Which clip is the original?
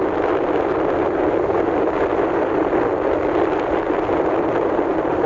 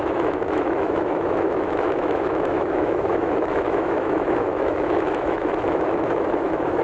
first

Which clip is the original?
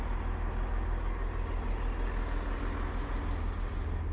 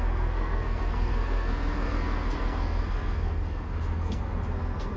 first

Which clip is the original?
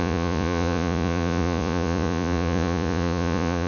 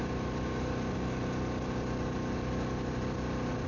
second